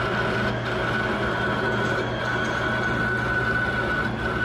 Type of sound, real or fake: real